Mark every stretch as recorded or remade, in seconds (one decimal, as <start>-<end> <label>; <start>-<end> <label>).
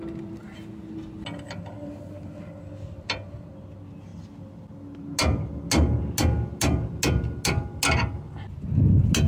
0.0-9.3 recorded